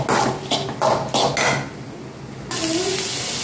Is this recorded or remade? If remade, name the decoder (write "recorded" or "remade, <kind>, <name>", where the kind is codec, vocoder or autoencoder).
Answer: recorded